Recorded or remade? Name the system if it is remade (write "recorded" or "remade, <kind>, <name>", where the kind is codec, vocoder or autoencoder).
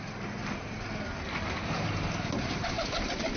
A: recorded